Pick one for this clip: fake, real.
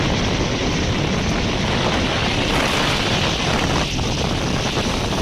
real